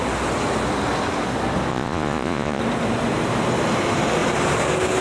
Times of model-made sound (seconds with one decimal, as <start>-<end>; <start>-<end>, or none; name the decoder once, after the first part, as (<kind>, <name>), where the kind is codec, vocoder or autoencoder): 1.7-2.6 (vocoder, Vocos)